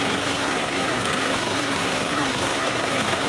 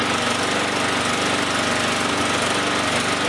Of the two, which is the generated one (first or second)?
first